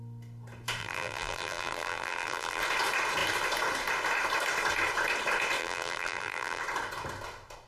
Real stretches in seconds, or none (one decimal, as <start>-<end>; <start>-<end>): 0.0-0.8; 2.6-5.6; 6.6-7.7